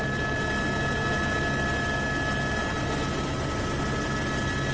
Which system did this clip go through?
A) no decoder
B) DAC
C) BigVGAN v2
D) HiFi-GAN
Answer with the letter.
A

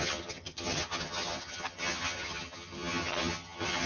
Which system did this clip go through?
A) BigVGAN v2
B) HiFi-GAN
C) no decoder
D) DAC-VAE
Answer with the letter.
B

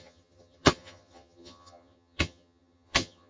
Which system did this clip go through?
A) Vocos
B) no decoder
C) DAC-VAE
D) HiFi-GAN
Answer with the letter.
D